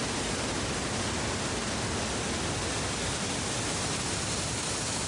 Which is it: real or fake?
real